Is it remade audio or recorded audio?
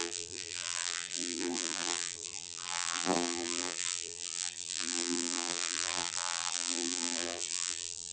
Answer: remade